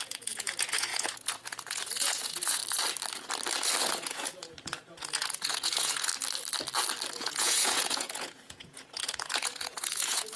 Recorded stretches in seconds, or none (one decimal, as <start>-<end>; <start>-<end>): 2.6-3.8; 6.1-7.1